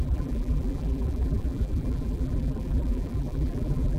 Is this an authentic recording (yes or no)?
no